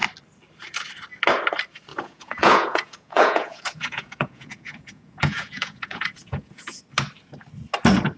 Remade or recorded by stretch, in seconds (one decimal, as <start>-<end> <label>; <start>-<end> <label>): 0.0-1.9 recorded; 1.9-6.8 remade; 6.8-8.2 recorded